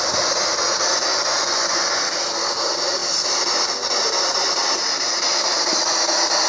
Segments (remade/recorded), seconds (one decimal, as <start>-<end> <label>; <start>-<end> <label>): 0.0-1.1 recorded; 1.1-1.9 remade; 1.9-6.5 recorded